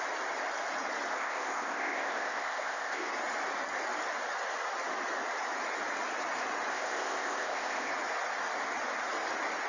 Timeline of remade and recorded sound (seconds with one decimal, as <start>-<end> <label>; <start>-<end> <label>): 0.0-1.1 recorded; 1.1-3.1 remade; 3.1-6.7 recorded; 6.7-7.9 remade; 7.9-9.7 recorded